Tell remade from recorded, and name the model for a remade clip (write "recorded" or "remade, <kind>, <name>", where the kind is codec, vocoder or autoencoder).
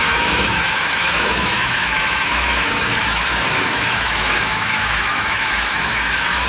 remade, autoencoder, DAC-VAE